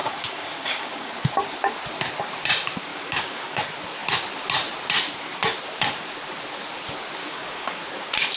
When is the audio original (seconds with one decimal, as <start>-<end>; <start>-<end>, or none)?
1.1-2.9; 3.6-7.2; 7.8-8.4